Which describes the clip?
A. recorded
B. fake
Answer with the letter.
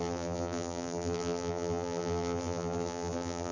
B